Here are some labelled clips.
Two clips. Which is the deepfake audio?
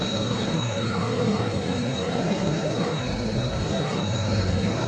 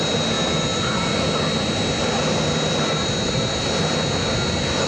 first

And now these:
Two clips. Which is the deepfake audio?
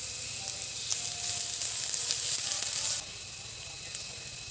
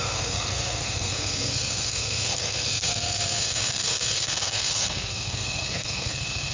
second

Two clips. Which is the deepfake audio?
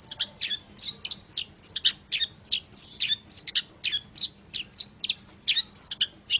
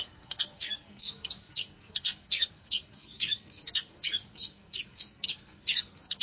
second